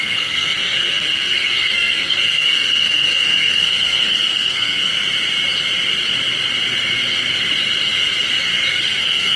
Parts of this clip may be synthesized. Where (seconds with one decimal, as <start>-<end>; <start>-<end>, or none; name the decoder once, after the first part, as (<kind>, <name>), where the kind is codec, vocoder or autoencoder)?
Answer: 0.0-4.9 (codec, SNAC); 8.7-9.4